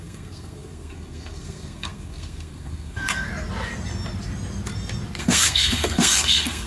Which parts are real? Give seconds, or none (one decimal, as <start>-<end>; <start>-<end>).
3.3-5.2